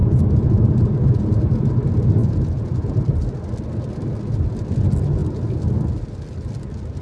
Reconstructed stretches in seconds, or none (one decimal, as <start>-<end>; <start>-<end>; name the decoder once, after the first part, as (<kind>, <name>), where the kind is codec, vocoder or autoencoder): 0.0-1.7 (vocoder, Vocos); 2.2-2.9